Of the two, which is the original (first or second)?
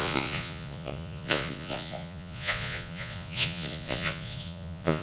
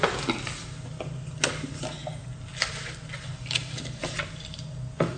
second